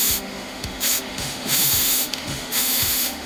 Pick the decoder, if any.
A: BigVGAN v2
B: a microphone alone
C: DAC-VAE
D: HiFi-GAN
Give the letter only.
C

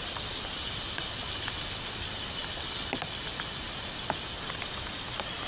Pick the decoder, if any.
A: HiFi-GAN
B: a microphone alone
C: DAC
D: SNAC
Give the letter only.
B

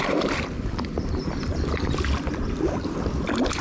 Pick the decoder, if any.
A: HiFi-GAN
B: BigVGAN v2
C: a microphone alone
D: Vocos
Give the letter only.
C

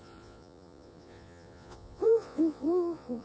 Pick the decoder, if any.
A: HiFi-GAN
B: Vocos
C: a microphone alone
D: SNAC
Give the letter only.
B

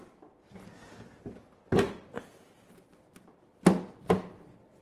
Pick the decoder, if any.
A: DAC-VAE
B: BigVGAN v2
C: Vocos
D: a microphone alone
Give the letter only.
D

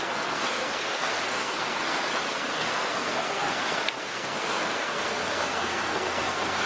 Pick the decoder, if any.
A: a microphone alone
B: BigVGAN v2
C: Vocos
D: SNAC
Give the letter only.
D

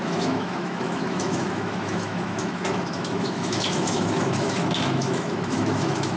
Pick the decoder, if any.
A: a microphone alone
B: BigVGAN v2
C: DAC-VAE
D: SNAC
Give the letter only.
C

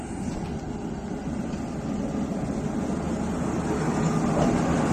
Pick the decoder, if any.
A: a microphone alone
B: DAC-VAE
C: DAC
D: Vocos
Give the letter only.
A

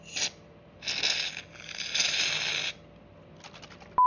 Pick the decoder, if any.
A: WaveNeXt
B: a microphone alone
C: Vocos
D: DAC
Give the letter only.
B